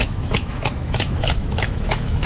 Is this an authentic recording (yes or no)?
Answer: no